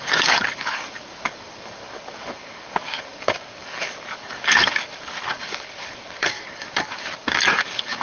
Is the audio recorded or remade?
remade